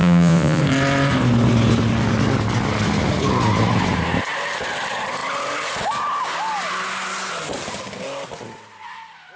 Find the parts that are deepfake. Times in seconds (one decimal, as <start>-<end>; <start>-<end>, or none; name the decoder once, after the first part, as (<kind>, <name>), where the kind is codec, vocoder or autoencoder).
0.0-0.6 (vocoder, Vocos)